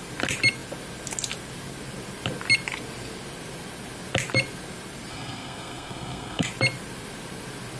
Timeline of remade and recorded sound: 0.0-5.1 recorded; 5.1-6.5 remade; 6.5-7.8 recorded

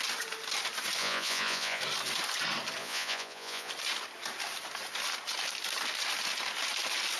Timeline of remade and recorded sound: 0.0-1.0 recorded; 1.0-1.8 remade; 1.8-2.8 recorded; 2.8-3.7 remade; 3.7-7.2 recorded